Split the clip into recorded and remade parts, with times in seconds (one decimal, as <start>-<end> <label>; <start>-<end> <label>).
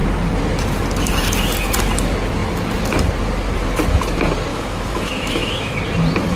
0.0-4.5 recorded; 4.5-5.8 remade; 5.8-6.4 recorded